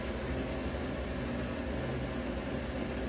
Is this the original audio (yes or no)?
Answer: yes